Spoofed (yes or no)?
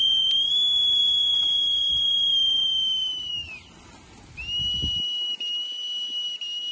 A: no